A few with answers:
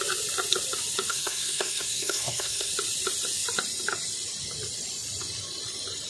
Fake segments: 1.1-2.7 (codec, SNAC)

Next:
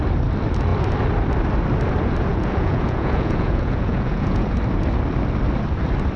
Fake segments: 2.3-4.6 (vocoder, Vocos)

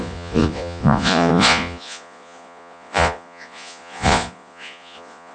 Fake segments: 0.0-5.3 (vocoder, Vocos)